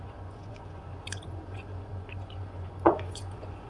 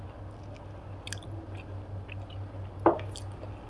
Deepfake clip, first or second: first